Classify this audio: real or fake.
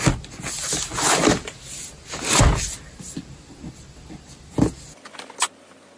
real